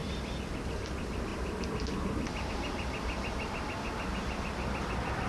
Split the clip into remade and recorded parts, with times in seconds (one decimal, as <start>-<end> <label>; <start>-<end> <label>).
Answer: 0.0-0.7 recorded; 0.7-5.3 remade